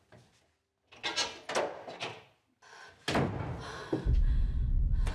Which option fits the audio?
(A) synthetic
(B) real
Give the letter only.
B